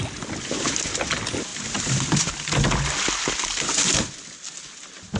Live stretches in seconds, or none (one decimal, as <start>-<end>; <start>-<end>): 0.0-5.2